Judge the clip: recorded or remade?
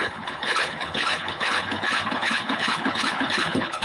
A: remade